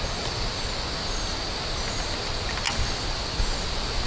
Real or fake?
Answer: real